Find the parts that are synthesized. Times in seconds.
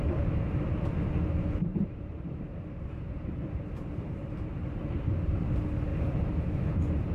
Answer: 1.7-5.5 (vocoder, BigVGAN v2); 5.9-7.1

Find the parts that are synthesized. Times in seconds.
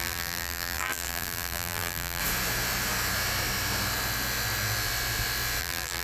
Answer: 0.0-2.2 (vocoder, BigVGAN v2); 5.6-6.0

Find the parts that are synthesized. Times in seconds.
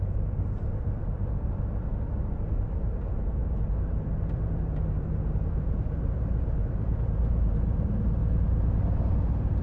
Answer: 0.0-8.2 (vocoder, BigVGAN v2); 9.1-9.6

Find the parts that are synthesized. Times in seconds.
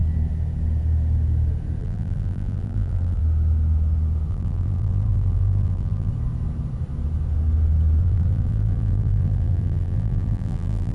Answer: 1.8-3.2 (vocoder, BigVGAN v2); 4.3-6.1; 8.0-10.9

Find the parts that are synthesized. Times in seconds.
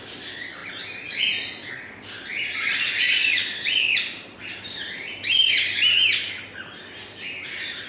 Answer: 2.3-6.6 (vocoder, BigVGAN v2)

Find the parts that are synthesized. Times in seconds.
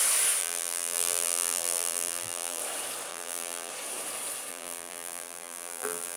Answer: 0.4-2.6 (vocoder, BigVGAN v2); 3.1-3.7; 4.5-6.2